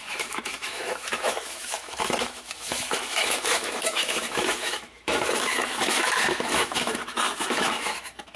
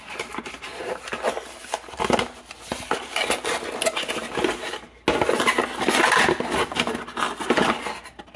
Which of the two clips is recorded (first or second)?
second